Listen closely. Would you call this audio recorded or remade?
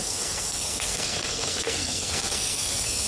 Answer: remade